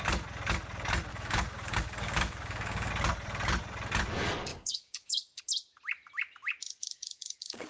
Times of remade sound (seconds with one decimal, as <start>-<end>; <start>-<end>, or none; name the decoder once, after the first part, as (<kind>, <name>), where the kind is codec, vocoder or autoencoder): 1.1-2.9 (codec, DAC); 4.5-5.4; 6.8-7.7